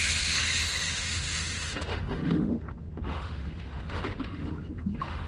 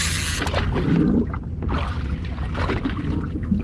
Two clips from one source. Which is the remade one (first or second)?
first